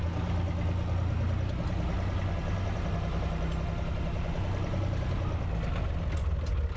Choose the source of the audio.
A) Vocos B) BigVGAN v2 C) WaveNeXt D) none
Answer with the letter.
D